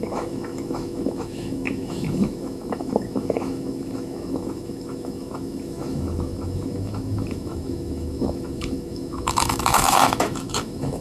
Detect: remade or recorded remade